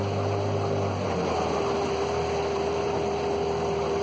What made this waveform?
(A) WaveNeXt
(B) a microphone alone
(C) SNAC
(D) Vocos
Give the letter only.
B